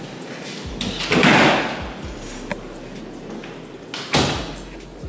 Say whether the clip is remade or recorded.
recorded